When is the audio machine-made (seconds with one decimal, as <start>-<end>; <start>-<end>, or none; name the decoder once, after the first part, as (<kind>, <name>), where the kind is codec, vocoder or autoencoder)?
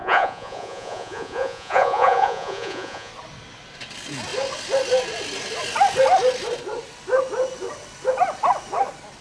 0.0-3.1 (vocoder, Vocos)